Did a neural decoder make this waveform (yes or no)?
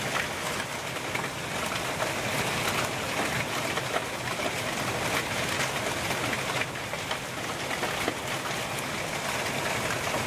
no